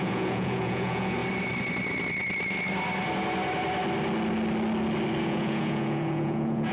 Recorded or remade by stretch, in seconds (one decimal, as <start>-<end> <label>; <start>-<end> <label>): 0.0-1.2 remade; 1.2-5.2 recorded; 5.2-6.7 remade